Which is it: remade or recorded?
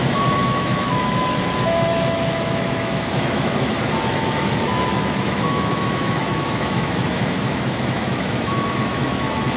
remade